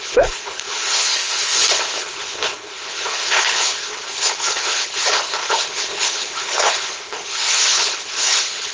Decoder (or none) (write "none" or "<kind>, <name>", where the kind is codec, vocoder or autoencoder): codec, HILCodec